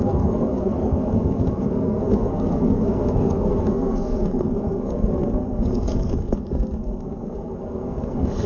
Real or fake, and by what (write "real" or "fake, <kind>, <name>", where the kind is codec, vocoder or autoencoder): fake, codec, SNAC